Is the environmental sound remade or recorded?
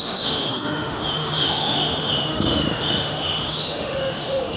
remade